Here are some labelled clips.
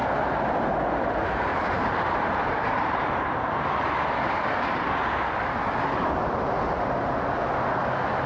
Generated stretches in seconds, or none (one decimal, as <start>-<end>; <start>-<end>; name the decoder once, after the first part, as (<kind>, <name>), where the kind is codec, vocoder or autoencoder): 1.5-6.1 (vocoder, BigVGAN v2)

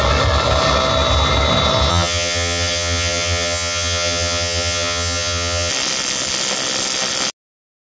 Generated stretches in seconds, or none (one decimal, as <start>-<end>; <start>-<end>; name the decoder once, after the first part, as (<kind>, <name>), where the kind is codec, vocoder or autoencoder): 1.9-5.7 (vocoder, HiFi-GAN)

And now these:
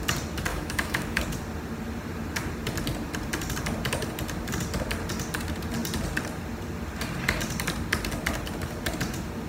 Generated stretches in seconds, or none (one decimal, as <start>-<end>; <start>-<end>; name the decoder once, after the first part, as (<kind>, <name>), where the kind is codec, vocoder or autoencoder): 0.5-1.2 (autoencoder, DAC-VAE)

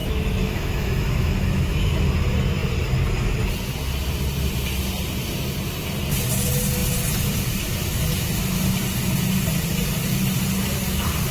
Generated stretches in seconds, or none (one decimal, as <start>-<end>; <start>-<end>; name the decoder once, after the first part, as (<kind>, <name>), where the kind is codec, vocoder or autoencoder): 0.0-2.1 (autoencoder, DAC-VAE)

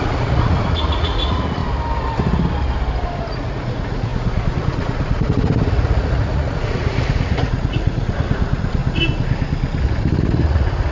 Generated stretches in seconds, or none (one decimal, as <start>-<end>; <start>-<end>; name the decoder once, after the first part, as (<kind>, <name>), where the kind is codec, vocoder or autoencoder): 0.0-1.6 (vocoder, Vocos); 3.3-8.8; 10.2-10.9

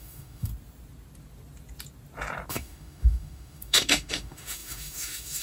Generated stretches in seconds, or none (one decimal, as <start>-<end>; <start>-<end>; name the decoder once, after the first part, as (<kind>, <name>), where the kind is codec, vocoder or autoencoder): 0.0-0.5 (autoencoder, DAC-VAE); 2.5-5.4

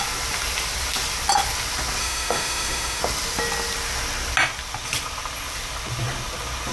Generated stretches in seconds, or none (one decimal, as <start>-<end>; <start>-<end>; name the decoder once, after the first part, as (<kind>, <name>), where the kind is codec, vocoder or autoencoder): 2.0-3.0 (autoencoder, DAC-VAE)

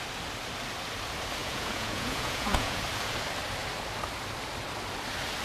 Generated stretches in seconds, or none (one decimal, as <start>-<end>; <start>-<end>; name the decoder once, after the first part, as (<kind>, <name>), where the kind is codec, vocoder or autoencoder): 1.4-2.8 (vocoder, Vocos)